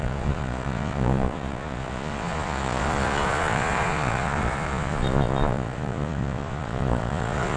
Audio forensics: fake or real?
fake